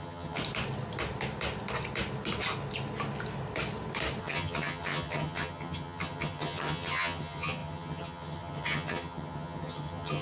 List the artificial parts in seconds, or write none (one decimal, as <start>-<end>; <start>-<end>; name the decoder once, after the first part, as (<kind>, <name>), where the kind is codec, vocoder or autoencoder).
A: 0.0-0.4 (vocoder, HiFi-GAN); 4.2-10.2